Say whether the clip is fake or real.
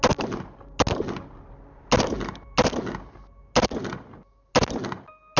real